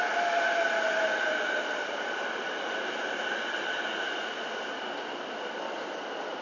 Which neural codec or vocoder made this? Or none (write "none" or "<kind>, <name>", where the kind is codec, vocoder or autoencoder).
none